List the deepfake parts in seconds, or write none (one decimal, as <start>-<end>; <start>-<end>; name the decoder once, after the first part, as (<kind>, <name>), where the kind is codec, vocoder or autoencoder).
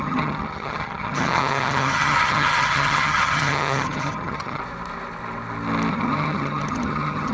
0.0-4.6 (vocoder, HiFi-GAN); 5.9-7.3